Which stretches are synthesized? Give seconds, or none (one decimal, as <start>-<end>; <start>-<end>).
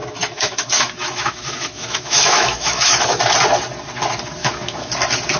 0.0-3.2; 4.4-4.9